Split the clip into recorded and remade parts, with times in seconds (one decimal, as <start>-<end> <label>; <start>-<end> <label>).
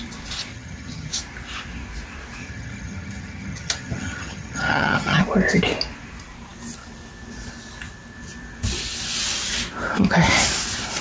0.0-0.5 recorded; 0.5-1.1 remade; 1.1-2.4 recorded; 2.4-5.2 remade; 5.2-11.0 recorded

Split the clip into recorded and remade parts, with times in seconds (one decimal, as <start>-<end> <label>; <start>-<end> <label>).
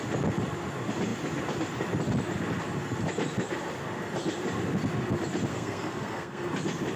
0.0-5.5 recorded; 5.5-6.5 remade; 6.5-7.0 recorded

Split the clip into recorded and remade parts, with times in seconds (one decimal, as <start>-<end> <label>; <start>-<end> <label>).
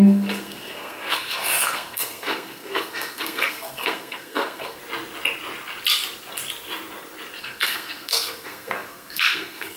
0.0-4.8 remade; 4.8-7.4 recorded; 7.4-9.8 remade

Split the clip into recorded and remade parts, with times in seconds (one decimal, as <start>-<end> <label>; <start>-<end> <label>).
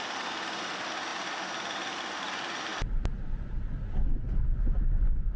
0.0-5.4 recorded